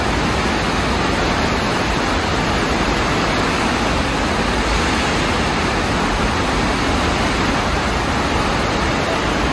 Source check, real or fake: real